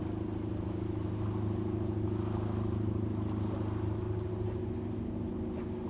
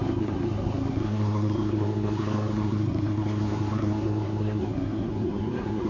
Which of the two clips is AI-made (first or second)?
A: second